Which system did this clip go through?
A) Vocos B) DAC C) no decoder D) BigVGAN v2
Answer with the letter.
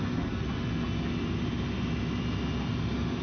C